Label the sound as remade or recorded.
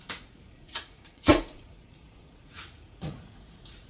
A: remade